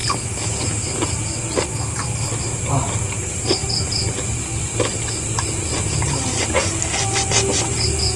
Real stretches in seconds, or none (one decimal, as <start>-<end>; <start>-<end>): 0.0-8.2